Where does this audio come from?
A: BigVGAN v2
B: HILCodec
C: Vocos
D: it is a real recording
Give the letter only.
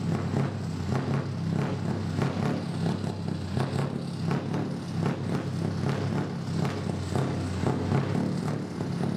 D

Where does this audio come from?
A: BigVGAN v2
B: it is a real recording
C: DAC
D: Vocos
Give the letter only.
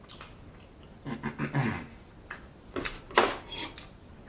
B